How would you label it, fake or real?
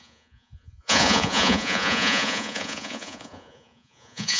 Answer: fake